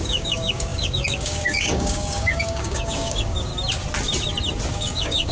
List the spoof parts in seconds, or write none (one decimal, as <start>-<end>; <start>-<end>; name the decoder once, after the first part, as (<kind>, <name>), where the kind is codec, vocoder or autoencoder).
0.0-3.5 (codec, DAC); 4.7-5.3